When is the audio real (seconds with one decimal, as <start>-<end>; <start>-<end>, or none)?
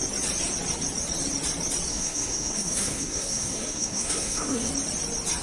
0.0-1.9; 4.7-5.4